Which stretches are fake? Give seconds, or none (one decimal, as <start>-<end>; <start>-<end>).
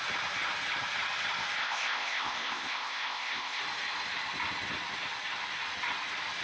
1.6-3.6